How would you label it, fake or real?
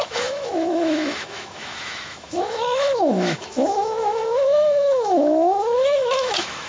fake